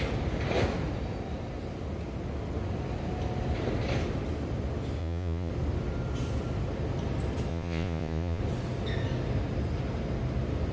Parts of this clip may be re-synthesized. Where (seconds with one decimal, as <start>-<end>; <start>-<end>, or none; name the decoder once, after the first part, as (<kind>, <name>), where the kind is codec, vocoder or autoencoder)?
5.0-5.5 (vocoder, Vocos); 7.5-8.4